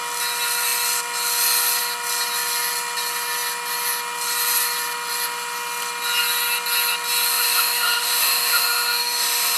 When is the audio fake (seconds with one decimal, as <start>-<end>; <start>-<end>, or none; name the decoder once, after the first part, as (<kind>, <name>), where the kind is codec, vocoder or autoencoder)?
7.3-9.6 (autoencoder, DAC-VAE)